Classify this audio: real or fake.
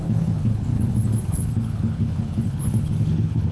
fake